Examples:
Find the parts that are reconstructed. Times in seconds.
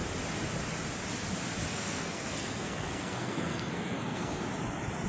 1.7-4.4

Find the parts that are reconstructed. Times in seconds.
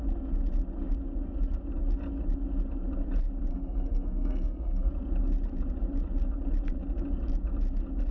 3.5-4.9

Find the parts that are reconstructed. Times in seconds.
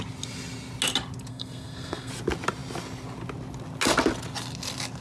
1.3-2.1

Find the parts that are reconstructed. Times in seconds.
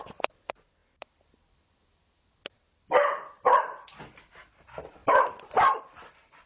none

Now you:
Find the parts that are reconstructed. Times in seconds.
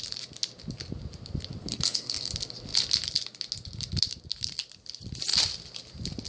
1.6-2.3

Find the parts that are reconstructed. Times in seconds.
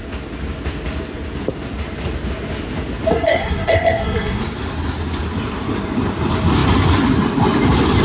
3.1-4.4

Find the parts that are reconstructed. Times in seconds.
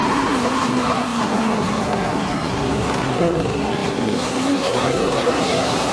0.0-5.9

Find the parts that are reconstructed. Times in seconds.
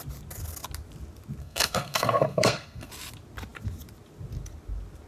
1.4-2.9